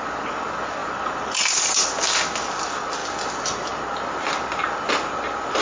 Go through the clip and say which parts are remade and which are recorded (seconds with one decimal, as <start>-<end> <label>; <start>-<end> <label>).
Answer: 0.0-5.6 recorded